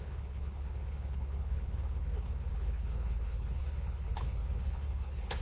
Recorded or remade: remade